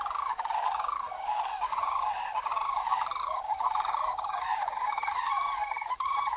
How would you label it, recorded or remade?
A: remade